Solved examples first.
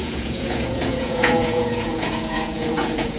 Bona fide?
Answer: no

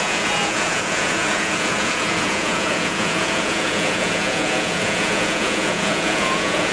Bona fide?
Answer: no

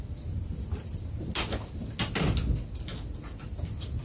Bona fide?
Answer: yes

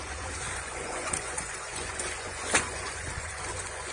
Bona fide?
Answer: no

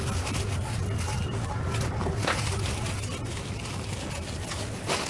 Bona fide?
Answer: yes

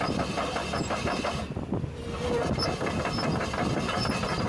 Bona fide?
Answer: yes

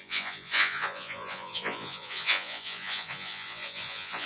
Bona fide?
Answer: no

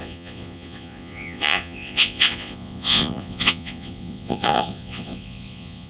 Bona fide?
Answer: no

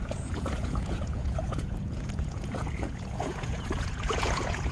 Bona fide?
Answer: no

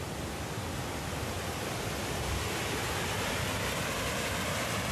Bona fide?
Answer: yes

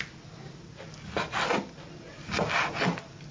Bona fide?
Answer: yes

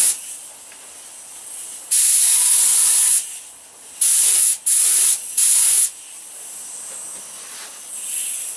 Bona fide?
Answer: yes